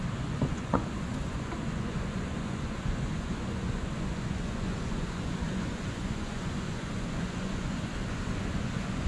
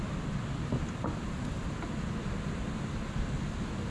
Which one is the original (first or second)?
second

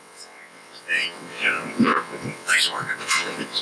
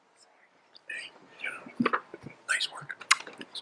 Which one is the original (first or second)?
second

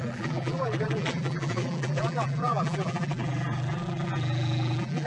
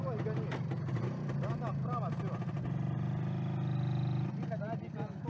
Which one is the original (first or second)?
second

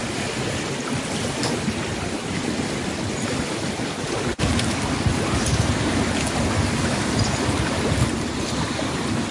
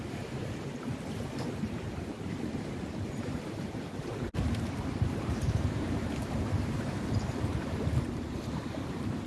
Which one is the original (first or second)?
first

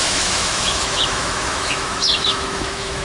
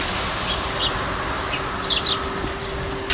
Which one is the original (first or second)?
second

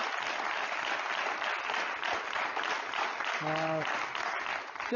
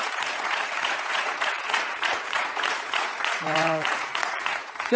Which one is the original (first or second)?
first